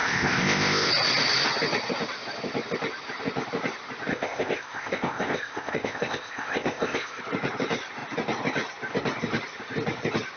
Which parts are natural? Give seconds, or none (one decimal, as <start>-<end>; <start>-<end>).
0.9-4.1; 7.2-10.4